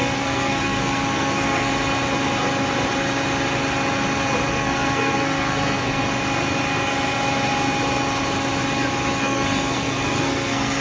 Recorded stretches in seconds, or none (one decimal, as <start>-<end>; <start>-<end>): 1.7-4.5; 6.0-9.2